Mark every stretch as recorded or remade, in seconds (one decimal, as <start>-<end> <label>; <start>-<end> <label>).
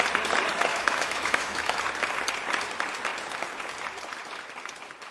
0.0-0.7 recorded; 0.7-1.8 remade; 1.8-5.1 recorded